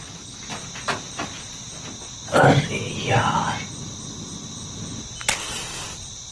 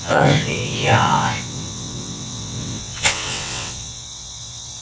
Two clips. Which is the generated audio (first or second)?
second